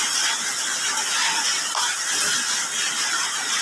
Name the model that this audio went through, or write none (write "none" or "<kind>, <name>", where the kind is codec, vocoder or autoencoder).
none